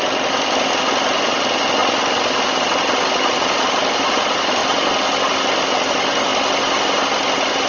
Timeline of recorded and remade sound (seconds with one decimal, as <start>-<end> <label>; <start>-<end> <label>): 0.0-4.6 remade; 4.6-5.6 recorded; 5.6-6.3 remade; 6.3-7.7 recorded